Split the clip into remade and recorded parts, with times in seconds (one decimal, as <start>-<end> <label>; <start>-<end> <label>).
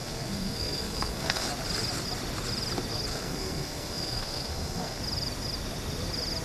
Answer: 0.0-1.5 remade; 1.5-3.1 recorded; 3.1-5.0 remade; 5.0-6.4 recorded